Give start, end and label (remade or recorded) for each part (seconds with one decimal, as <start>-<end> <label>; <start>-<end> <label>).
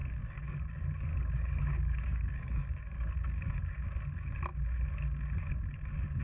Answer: 0.0-0.5 remade; 0.5-1.1 recorded; 1.1-3.6 remade; 3.6-6.2 recorded